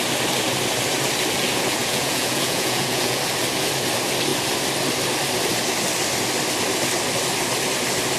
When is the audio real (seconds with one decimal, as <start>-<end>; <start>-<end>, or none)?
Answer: 0.0-1.8; 3.2-8.2